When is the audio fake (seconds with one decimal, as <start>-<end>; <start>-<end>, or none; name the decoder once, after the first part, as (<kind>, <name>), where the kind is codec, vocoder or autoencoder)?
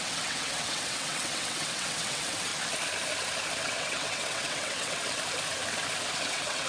0.0-2.5 (vocoder, WaveNeXt); 3.6-5.0; 6.2-6.7